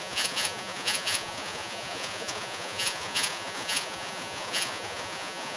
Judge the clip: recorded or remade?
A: remade